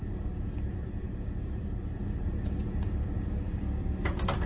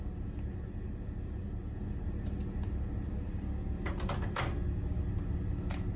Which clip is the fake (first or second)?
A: first